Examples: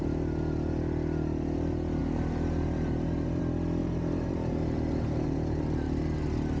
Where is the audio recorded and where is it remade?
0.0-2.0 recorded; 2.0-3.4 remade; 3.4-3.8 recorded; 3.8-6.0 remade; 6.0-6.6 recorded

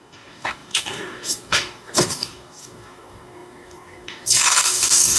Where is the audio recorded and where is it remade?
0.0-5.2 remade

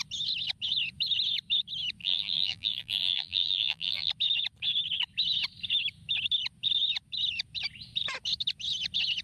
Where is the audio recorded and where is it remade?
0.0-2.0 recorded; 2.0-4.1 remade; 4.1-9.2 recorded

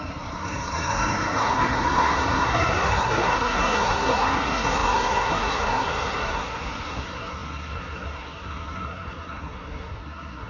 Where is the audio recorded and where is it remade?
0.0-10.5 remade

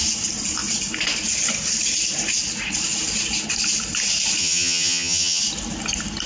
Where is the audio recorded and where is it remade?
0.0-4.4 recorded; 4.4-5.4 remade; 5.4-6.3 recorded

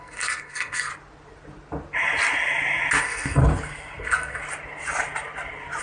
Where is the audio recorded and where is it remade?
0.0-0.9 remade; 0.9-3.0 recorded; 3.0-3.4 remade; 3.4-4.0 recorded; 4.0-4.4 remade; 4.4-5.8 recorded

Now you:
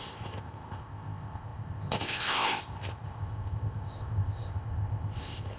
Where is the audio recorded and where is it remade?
0.0-5.6 remade

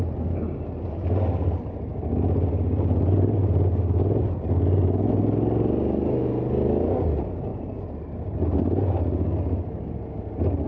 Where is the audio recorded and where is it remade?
0.0-10.7 recorded